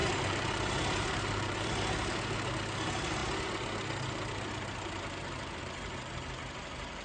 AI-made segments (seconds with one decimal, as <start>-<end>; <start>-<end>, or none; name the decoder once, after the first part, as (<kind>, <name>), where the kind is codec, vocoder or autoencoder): 0.0-1.7 (vocoder, BigVGAN v2)

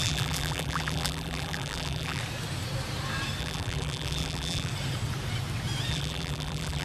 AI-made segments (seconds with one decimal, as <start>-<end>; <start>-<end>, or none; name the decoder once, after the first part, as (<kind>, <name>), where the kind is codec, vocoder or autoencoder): 0.0-2.2 (vocoder, BigVGAN v2); 3.4-4.7; 5.9-6.8

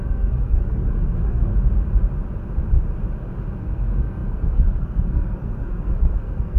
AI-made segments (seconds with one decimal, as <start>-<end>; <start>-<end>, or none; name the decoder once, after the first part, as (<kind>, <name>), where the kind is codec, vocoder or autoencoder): 0.0-1.5 (codec, SNAC); 3.6-6.6

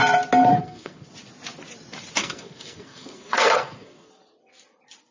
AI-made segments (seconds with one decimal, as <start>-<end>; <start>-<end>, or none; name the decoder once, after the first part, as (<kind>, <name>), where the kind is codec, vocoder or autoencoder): 0.5-1.1 (codec, SNAC); 2.2-4.1

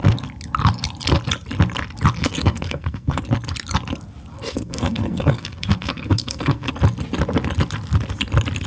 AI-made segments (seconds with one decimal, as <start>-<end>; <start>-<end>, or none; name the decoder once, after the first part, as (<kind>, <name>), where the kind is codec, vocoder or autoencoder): 2.2-3.2 (codec, SNAC); 4.3-6.7

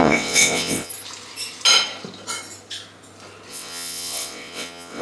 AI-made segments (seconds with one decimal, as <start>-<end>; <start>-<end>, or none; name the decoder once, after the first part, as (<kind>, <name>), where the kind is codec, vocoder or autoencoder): 0.0-0.9 (vocoder, WaveNeXt); 3.5-5.0

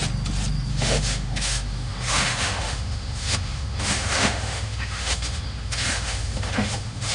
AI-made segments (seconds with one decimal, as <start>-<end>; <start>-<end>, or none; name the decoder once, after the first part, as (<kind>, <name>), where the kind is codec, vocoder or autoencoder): 0.7-7.1 (autoencoder, DAC-VAE)

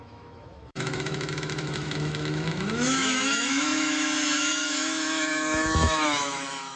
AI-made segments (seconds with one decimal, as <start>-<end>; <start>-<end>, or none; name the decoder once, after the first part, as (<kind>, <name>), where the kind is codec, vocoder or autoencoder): 0.0-6.8 (autoencoder, DAC-VAE)